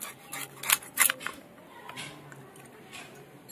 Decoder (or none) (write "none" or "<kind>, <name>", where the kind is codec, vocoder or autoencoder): none